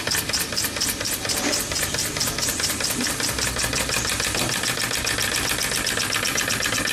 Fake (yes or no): no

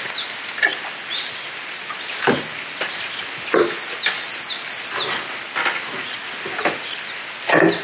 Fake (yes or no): no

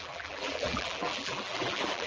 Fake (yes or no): yes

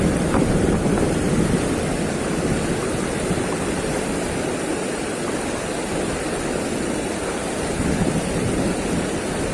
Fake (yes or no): no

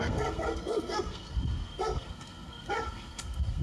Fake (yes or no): yes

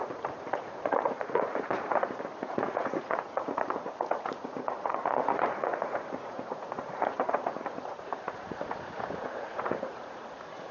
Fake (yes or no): yes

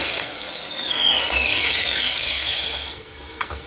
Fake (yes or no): yes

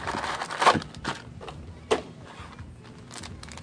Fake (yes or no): no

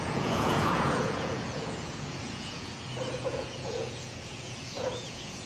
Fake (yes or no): yes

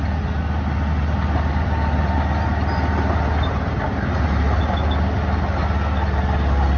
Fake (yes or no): no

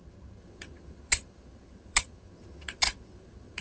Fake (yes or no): yes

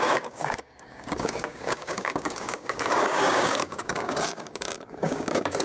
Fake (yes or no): yes